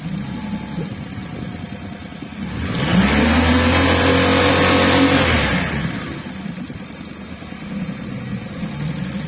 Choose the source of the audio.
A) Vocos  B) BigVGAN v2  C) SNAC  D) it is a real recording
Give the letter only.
D